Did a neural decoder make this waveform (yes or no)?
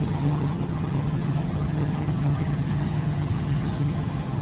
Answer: yes